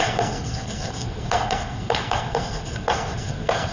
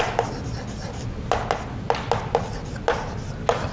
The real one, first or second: second